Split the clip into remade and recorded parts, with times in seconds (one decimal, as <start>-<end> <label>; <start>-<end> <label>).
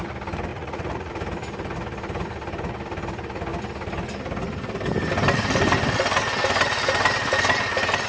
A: 0.0-0.5 recorded; 0.5-1.1 remade; 1.1-8.1 recorded